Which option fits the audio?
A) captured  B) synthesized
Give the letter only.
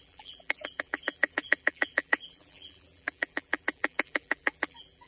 B